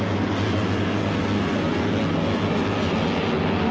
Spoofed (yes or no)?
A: no